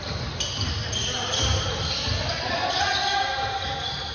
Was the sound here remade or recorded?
recorded